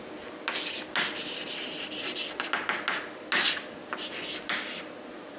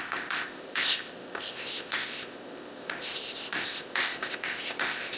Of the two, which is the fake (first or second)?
second